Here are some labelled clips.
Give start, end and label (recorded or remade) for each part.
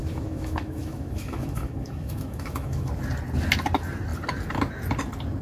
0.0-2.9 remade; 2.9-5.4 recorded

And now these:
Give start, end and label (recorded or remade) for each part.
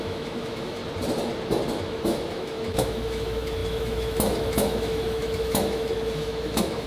0.0-0.8 remade; 0.8-1.8 recorded; 1.8-6.9 remade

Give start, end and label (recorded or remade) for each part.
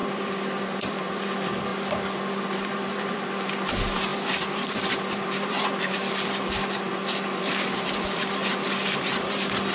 0.0-1.7 remade; 1.7-2.4 recorded; 2.4-9.7 remade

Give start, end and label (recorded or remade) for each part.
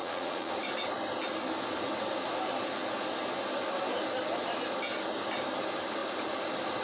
0.0-0.5 remade; 0.5-6.8 recorded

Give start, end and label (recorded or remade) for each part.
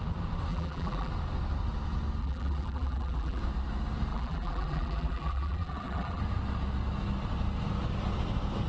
0.0-0.5 recorded; 0.5-1.1 remade; 1.1-2.2 recorded; 2.2-3.4 remade; 3.4-4.1 recorded; 4.1-6.2 remade; 6.2-8.7 recorded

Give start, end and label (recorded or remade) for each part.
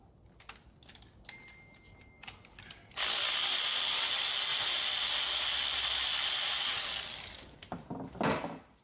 0.0-8.8 recorded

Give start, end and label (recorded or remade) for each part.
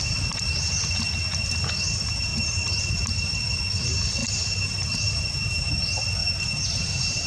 0.0-2.3 recorded; 2.3-2.8 remade; 2.8-4.2 recorded; 4.2-5.7 remade; 5.7-6.2 recorded; 6.2-7.3 remade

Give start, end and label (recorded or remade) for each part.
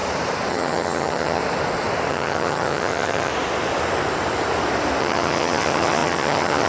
0.0-0.5 recorded; 0.5-1.4 remade; 1.4-2.1 recorded; 2.1-3.3 remade; 3.3-5.0 recorded; 5.0-6.7 remade